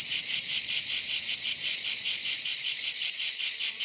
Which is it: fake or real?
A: fake